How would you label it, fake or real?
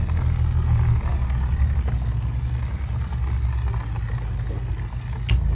real